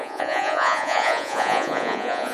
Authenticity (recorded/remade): remade